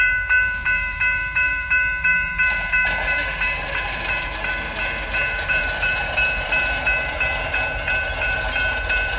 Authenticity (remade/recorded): remade